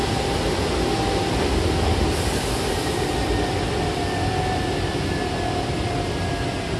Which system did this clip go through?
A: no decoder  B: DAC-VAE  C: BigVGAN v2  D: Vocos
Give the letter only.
A